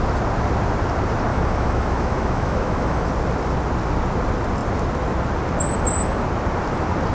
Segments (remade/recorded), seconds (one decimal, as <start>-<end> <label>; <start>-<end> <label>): 0.0-1.3 recorded; 1.3-3.1 remade; 3.1-7.1 recorded